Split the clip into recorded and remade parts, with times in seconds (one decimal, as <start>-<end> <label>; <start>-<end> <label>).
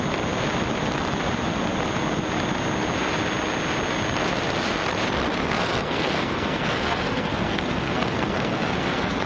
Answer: 0.0-5.4 recorded; 5.4-9.3 remade